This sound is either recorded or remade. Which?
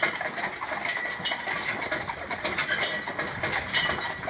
remade